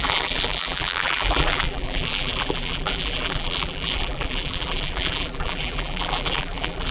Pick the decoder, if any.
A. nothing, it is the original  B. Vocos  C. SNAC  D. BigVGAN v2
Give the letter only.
D